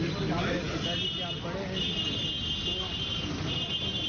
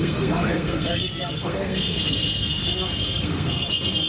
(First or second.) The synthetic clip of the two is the second